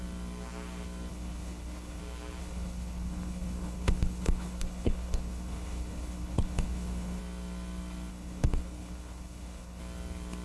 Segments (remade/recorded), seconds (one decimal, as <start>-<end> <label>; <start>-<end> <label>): 0.0-1.1 recorded; 1.1-2.0 remade; 2.0-2.4 recorded; 2.4-7.2 remade; 7.2-8.1 recorded; 8.1-9.8 remade; 9.8-10.4 recorded